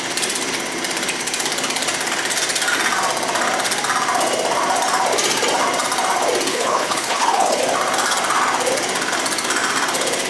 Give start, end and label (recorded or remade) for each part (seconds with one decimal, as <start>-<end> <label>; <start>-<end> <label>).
0.0-6.5 recorded; 6.5-7.6 remade; 7.6-10.3 recorded

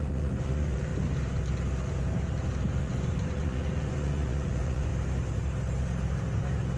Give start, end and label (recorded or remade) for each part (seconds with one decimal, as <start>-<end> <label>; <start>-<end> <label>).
0.0-0.9 remade; 0.9-2.8 recorded; 2.8-4.9 remade; 4.9-6.8 recorded

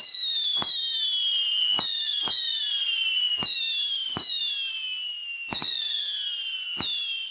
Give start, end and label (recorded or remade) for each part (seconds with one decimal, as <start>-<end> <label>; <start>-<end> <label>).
0.0-7.3 recorded

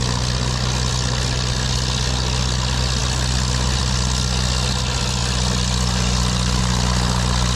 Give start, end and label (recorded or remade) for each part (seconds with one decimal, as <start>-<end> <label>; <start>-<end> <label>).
0.0-5.2 recorded; 5.2-6.6 remade; 6.6-7.6 recorded

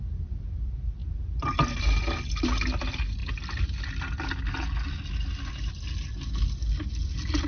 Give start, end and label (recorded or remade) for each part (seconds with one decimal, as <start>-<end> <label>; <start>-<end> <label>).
0.0-7.5 recorded